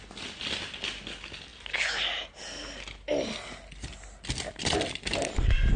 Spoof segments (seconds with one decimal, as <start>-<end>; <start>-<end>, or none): none